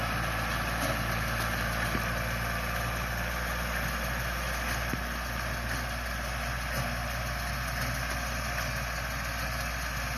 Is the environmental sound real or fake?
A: real